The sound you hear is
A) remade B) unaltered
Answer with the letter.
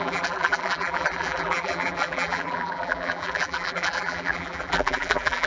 A